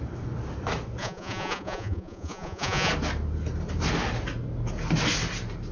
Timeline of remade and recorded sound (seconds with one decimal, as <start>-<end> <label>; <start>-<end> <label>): 0.0-1.0 recorded; 1.0-2.9 remade; 2.9-5.7 recorded

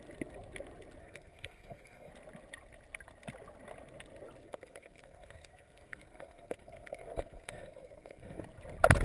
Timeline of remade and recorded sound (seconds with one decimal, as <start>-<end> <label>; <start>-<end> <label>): 0.0-1.0 recorded; 1.0-2.1 remade; 2.1-4.4 recorded; 4.4-8.4 remade; 8.4-9.0 recorded